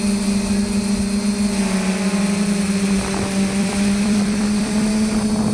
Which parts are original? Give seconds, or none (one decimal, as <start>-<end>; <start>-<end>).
0.0-3.6; 4.9-5.5